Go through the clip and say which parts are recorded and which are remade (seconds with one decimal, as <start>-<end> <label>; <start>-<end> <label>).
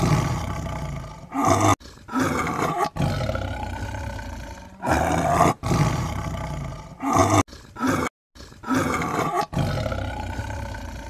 0.0-11.1 recorded